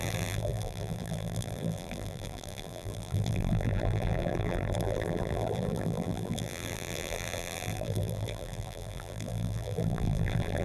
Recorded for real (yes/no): no